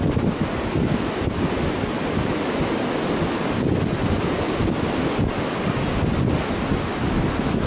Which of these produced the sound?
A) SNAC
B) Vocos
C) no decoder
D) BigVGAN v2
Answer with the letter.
C